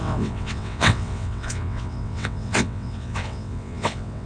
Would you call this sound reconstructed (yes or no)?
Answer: yes